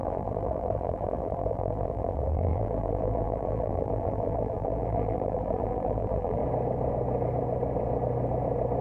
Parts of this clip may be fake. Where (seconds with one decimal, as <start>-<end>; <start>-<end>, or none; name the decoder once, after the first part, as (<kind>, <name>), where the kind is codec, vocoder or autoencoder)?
0.0-6.4 (vocoder, BigVGAN v2)